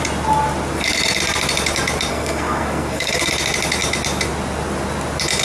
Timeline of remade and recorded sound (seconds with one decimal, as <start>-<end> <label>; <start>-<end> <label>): 0.0-2.1 recorded; 2.1-3.3 remade; 3.3-5.4 recorded